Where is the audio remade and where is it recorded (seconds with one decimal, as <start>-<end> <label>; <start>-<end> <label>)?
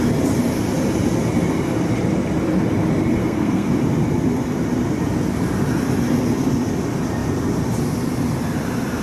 0.0-3.2 recorded; 3.2-3.7 remade; 3.7-9.0 recorded